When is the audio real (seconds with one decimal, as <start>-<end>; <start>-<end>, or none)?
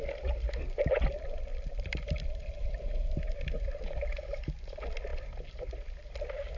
0.0-1.5; 2.9-5.1; 5.7-6.6